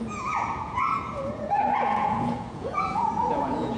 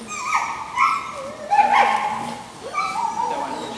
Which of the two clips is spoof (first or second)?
first